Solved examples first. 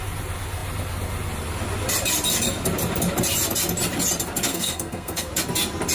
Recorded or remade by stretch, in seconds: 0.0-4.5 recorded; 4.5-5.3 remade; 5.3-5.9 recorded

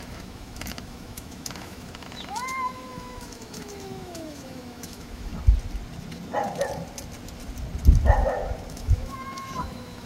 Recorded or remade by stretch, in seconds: 0.0-5.3 remade; 5.3-8.7 recorded; 8.7-10.1 remade

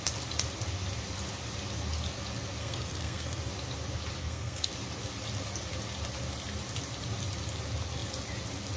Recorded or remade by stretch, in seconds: 0.0-2.6 recorded; 2.6-3.4 remade; 3.4-4.2 recorded; 4.2-4.7 remade; 4.7-8.8 recorded

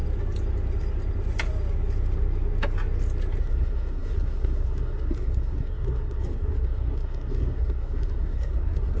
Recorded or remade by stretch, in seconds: 0.0-3.4 recorded; 3.4-9.0 remade

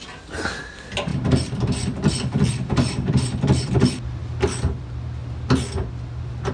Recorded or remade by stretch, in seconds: 0.0-1.1 recorded; 1.1-3.7 remade; 3.7-6.5 recorded